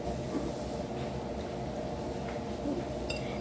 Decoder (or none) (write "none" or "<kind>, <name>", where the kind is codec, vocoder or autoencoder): none